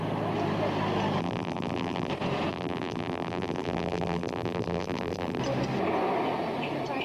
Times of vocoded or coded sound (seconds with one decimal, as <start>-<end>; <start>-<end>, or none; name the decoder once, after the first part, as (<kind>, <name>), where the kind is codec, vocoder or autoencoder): 1.2-2.1 (vocoder, BigVGAN v2); 2.5-5.4